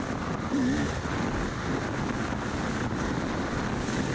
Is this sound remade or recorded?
recorded